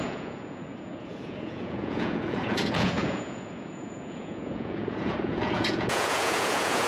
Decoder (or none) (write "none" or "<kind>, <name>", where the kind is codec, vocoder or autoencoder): vocoder, Vocos